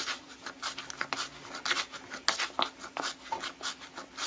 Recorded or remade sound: recorded